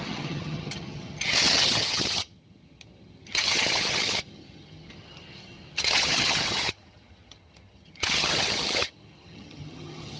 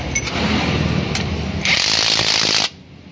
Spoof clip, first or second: first